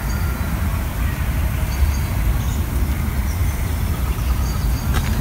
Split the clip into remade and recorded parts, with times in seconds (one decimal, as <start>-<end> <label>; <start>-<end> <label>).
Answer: 0.0-0.7 recorded; 0.7-1.8 remade; 1.8-3.4 recorded; 3.4-4.2 remade; 4.2-5.2 recorded